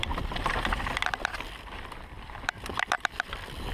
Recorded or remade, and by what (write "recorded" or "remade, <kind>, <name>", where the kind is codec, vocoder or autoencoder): remade, vocoder, BigVGAN v2